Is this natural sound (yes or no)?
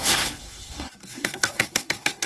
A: no